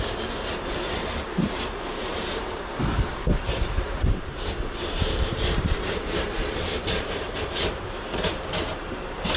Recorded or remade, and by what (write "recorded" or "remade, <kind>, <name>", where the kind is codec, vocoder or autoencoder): remade, vocoder, BigVGAN v2